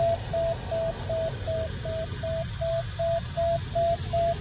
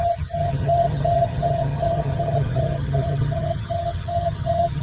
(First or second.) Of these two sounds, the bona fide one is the first